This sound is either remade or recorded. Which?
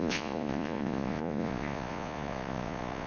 remade